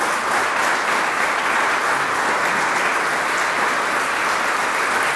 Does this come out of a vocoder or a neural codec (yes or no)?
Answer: no